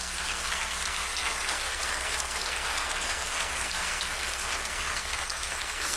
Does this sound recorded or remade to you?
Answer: remade